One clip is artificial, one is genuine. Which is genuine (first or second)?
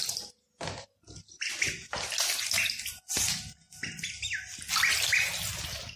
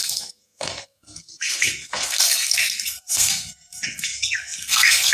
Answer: first